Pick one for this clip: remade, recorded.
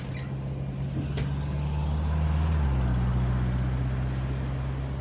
recorded